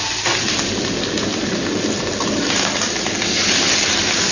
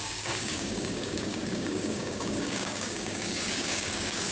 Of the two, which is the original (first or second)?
first